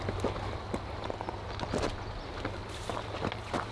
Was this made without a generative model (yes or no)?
yes